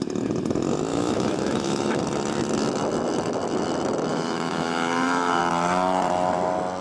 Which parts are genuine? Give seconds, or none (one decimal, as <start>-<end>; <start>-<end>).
0.0-0.9; 2.0-4.1; 5.4-6.8